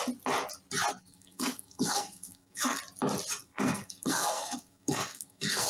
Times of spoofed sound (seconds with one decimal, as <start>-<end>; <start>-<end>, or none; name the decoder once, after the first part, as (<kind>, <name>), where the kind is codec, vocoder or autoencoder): 0.9-2.8 (codec, SNAC); 3.4-5.7